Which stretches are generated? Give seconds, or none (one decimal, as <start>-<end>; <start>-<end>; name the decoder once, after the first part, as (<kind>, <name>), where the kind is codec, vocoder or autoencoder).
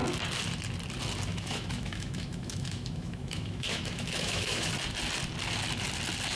1.3-4.7 (autoencoder, DAC-VAE)